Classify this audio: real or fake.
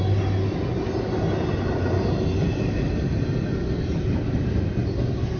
real